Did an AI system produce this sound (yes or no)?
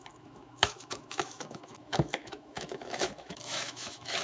yes